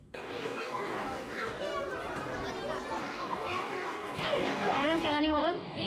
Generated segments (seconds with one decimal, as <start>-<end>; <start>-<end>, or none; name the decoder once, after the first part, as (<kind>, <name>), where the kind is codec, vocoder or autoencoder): 0.0-1.7 (codec, DAC); 3.0-5.9